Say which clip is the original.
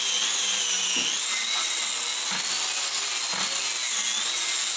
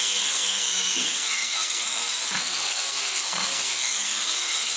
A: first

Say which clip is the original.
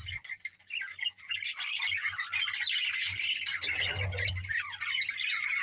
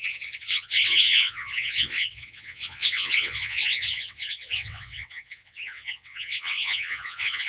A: first